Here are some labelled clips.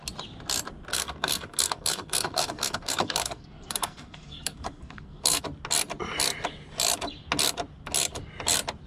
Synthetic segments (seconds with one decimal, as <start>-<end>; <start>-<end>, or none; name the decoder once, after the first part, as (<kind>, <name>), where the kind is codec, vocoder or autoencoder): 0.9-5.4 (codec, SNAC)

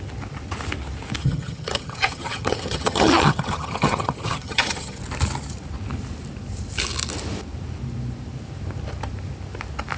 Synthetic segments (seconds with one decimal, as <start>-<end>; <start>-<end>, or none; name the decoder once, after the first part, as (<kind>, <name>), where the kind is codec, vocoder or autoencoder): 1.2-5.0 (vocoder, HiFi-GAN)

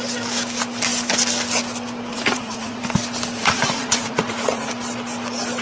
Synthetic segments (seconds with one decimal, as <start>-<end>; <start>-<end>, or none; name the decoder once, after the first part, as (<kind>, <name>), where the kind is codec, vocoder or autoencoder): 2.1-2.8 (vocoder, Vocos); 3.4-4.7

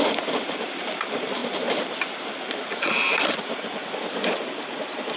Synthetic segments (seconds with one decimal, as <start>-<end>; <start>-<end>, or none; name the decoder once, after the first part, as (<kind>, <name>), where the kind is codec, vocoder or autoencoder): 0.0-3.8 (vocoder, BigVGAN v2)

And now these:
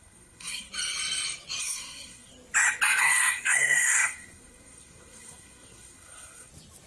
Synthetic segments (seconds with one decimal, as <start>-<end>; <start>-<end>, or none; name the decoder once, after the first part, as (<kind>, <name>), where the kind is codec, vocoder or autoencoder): 0.0-0.7 (codec, SNAC); 1.6-2.3; 3.0-6.5

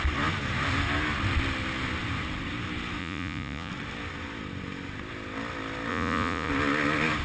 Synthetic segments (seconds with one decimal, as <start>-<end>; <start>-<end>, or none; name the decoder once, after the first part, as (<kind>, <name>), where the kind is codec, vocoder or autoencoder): 3.0-3.7 (vocoder, Vocos); 5.9-6.5

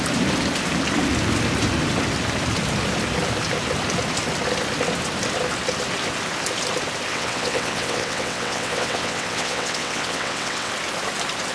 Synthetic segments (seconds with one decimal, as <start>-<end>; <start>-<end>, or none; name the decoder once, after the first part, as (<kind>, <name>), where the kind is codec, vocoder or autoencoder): 7.1-10.7 (vocoder, WaveNeXt)